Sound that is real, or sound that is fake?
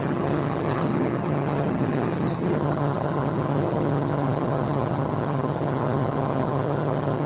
fake